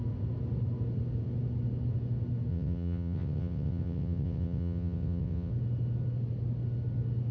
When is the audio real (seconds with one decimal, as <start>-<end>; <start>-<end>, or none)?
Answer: 0.0-2.5; 5.5-7.3